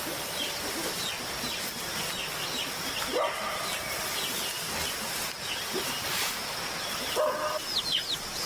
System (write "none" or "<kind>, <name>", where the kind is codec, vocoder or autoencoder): none